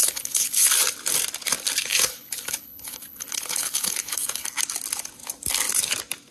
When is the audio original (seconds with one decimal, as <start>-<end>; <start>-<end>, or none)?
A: 0.7-1.9; 4.5-6.3